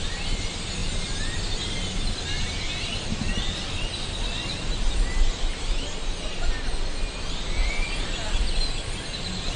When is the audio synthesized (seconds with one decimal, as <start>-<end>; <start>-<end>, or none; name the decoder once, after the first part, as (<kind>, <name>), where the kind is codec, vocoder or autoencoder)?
none